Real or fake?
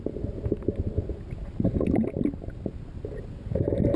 real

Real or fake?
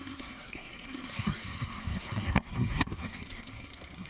fake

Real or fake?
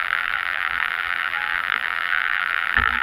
fake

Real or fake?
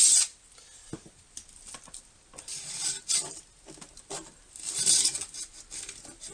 real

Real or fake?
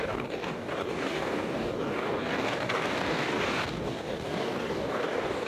fake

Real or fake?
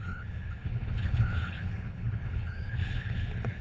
fake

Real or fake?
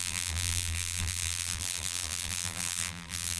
fake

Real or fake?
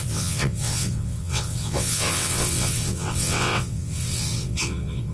fake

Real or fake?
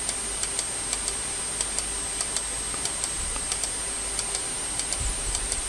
real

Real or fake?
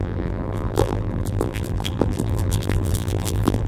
fake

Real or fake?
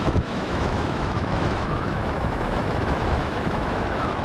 fake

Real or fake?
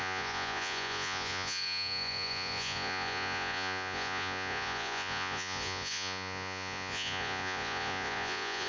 fake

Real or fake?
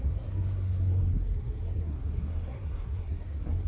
fake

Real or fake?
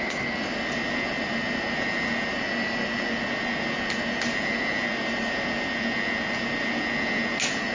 real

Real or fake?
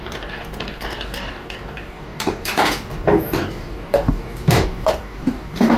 fake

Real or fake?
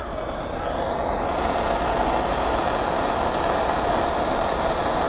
real